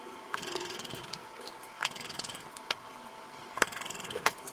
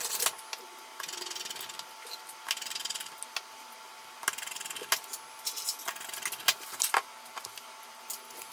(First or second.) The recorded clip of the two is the second